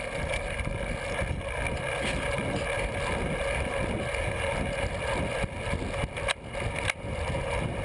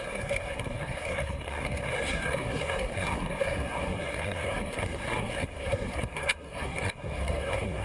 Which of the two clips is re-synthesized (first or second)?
second